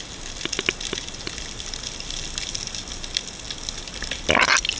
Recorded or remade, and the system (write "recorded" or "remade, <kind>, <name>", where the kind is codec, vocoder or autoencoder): recorded